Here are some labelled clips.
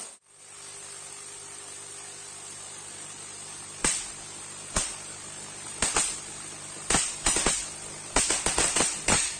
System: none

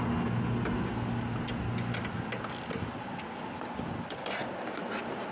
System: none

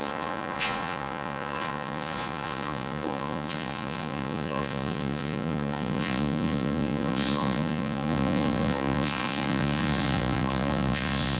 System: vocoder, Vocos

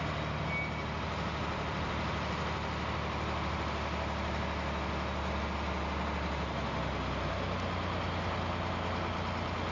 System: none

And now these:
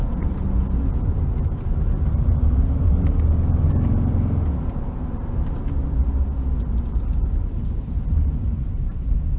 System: none